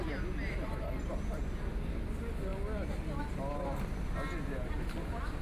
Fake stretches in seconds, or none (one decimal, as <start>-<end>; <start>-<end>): none